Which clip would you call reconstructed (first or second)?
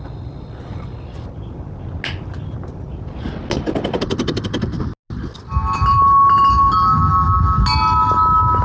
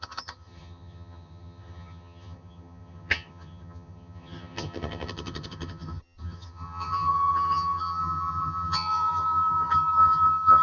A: second